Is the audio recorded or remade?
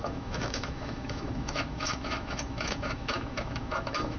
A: remade